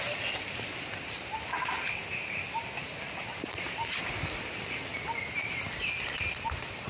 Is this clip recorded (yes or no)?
yes